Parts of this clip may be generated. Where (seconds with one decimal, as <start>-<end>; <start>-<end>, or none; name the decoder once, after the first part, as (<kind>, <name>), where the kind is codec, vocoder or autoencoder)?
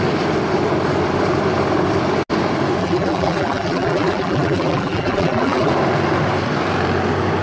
2.8-5.7 (vocoder, BigVGAN v2)